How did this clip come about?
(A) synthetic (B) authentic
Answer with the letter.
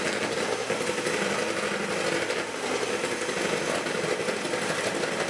B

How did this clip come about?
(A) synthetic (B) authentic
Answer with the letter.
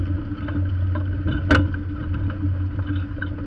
B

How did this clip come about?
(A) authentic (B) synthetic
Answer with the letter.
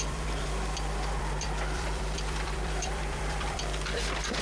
B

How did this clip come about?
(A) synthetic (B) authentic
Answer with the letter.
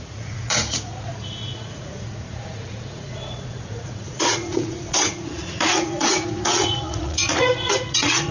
A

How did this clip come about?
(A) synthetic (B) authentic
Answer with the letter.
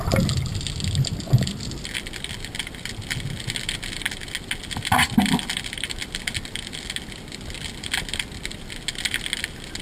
B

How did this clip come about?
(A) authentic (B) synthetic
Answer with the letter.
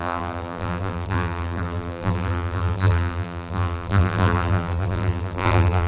B